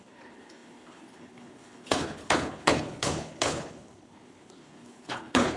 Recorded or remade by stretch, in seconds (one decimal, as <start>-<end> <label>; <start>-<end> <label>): 0.0-5.6 remade